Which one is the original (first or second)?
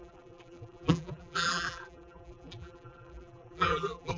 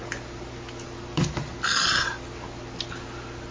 second